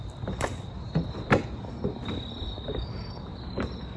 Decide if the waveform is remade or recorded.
recorded